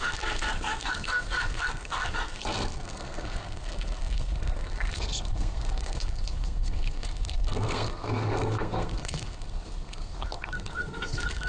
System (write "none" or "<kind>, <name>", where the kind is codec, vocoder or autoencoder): codec, SNAC